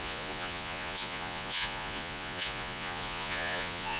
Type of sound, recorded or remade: remade